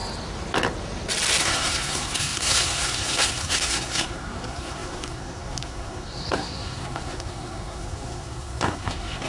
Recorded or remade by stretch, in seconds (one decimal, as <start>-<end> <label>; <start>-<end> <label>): 0.0-1.4 recorded; 1.4-9.3 remade

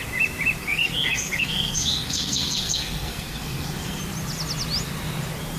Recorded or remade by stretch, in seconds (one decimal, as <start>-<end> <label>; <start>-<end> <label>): 0.0-0.6 recorded; 0.6-4.0 remade; 4.0-5.6 recorded

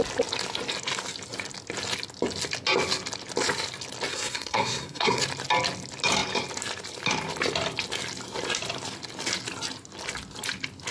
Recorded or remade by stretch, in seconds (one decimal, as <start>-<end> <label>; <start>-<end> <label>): 0.0-4.1 recorded; 4.1-5.2 remade; 5.2-10.9 recorded

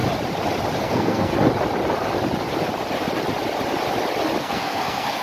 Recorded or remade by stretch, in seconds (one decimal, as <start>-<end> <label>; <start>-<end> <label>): 0.0-0.8 recorded; 0.8-1.3 remade; 1.3-4.4 recorded; 4.4-5.2 remade

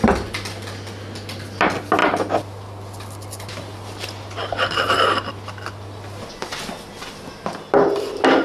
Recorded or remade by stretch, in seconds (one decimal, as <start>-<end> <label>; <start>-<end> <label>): 0.0-8.4 recorded

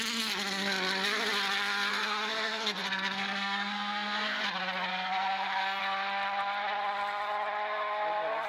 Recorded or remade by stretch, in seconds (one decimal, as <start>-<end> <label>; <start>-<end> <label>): 0.0-1.9 recorded; 1.9-4.4 remade; 4.4-4.9 recorded; 4.9-5.8 remade; 5.8-8.5 recorded

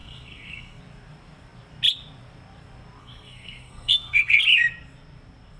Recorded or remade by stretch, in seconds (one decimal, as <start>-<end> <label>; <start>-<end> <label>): 0.0-0.8 remade; 0.8-3.0 recorded; 3.0-4.4 remade; 4.4-5.6 recorded

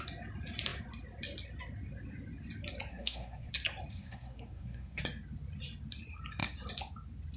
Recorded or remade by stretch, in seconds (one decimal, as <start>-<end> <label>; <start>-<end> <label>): 0.0-2.9 recorded; 2.9-3.5 remade; 3.5-3.9 recorded; 3.9-5.0 remade; 5.0-7.4 recorded